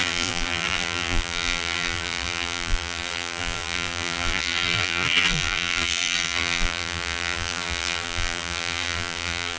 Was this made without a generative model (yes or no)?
no